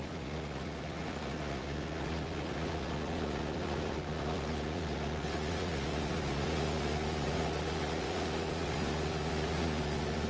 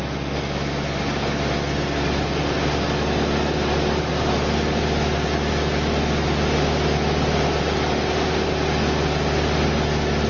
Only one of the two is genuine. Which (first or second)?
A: second